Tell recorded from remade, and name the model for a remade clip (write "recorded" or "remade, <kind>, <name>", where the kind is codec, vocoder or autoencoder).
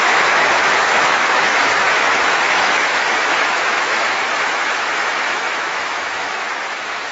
remade, autoencoder, DAC-VAE